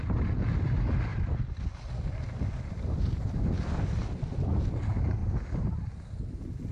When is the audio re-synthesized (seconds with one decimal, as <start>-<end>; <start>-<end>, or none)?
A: none